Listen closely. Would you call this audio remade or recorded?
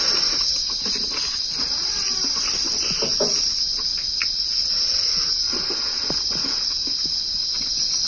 recorded